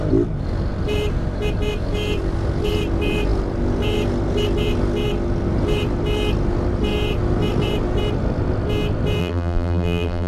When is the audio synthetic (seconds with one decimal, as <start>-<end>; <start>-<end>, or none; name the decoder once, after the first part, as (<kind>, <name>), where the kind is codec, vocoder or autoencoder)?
9.2-10.3 (vocoder, BigVGAN v2)